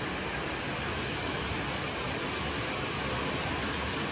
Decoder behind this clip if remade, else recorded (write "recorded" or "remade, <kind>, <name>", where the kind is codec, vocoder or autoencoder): recorded